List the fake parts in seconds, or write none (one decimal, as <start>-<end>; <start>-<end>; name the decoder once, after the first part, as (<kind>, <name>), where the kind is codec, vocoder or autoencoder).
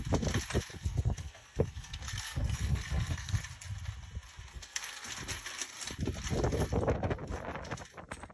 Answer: 0.7-3.4 (codec, SNAC); 4.5-5.1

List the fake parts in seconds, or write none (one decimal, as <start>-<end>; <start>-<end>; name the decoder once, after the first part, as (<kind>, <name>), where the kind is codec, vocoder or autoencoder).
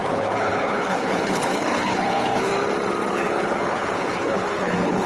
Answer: 0.0-2.5 (codec, HILCodec); 3.1-5.1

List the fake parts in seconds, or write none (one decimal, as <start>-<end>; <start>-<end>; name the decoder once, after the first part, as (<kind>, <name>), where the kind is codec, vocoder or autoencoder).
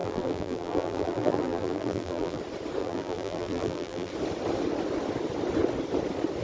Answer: 0.0-2.4 (vocoder, BigVGAN v2); 2.8-4.1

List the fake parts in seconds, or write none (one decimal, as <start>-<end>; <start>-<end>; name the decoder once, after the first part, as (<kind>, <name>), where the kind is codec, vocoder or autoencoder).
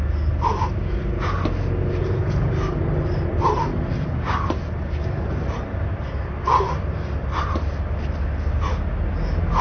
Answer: 2.0-2.5 (vocoder, Vocos)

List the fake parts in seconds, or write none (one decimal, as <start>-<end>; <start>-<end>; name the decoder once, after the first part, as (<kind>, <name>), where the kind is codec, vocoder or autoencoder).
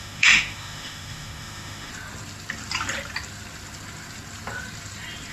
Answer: 0.0-1.9 (autoencoder, DAC-VAE)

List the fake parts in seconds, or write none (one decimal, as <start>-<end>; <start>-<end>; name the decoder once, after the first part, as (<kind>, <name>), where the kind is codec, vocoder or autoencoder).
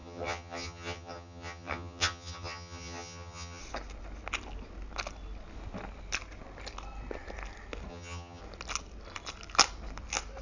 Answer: 0.0-3.6 (vocoder, HiFi-GAN); 7.9-8.4